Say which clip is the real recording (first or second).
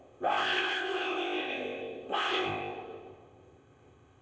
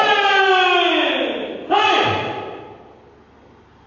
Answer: second